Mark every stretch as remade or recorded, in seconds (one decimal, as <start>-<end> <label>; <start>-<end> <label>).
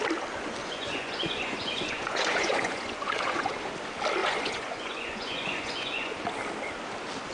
0.0-0.6 recorded; 0.6-3.5 remade; 3.5-4.2 recorded; 4.2-6.1 remade; 6.1-7.3 recorded